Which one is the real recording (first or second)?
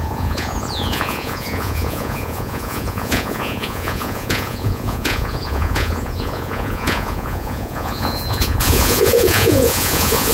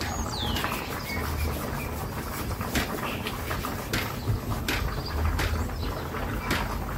second